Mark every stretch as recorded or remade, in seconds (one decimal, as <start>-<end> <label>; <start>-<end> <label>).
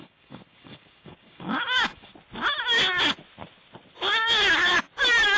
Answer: 0.0-2.1 remade; 2.1-5.4 recorded